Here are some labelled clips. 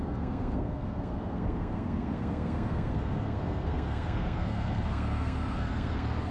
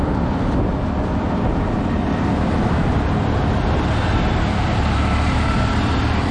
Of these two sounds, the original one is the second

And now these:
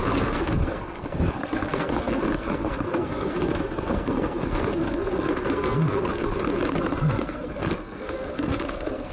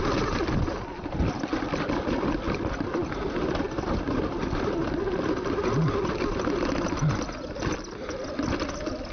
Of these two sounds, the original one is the second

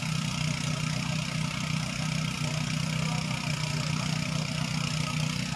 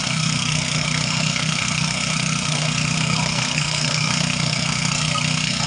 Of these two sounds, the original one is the first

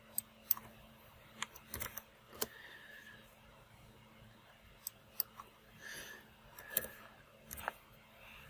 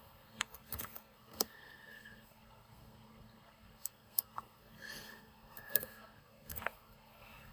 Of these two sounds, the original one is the first